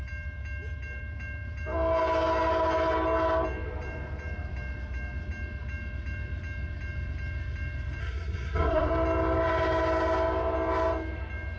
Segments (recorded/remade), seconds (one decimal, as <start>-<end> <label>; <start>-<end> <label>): 0.0-8.0 recorded; 8.0-8.9 remade; 8.9-11.6 recorded